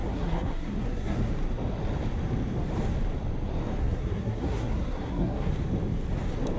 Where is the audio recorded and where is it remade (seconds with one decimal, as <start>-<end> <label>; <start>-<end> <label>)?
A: 0.0-1.3 remade; 1.3-3.8 recorded; 3.8-5.5 remade; 5.5-6.6 recorded

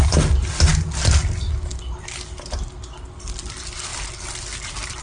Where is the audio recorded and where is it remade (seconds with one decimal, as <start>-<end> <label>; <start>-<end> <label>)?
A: 0.0-5.0 recorded

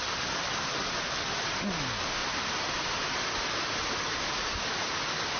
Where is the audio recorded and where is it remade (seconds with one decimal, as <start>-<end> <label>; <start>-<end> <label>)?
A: 0.0-5.4 recorded

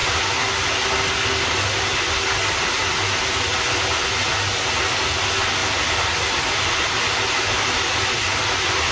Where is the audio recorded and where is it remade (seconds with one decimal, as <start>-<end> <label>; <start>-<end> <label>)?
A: 0.0-8.9 recorded

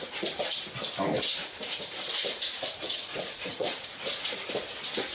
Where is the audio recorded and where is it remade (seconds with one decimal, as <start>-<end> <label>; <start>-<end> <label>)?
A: 0.0-1.4 recorded; 1.4-4.5 remade; 4.5-5.1 recorded

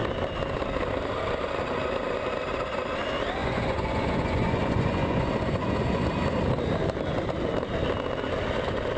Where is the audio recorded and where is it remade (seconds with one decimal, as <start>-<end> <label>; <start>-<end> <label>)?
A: 0.0-3.4 recorded; 3.4-6.1 remade; 6.1-9.0 recorded